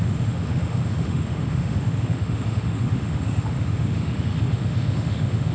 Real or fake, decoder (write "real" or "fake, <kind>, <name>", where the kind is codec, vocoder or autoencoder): fake, autoencoder, DAC-VAE